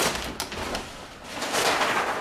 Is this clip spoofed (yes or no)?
yes